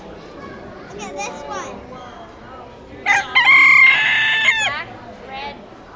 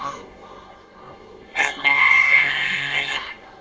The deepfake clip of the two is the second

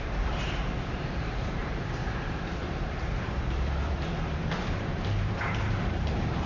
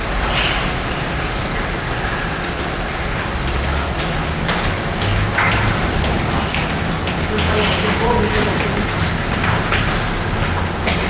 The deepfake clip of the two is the first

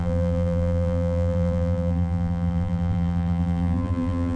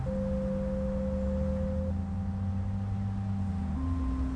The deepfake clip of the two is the first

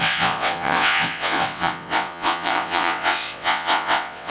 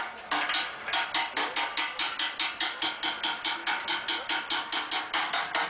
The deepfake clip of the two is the first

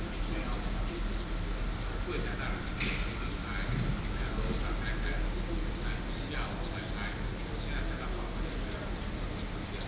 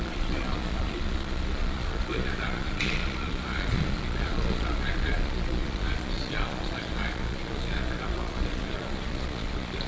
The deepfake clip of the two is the second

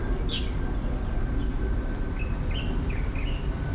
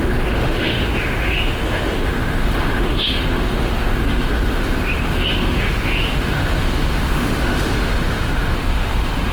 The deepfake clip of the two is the second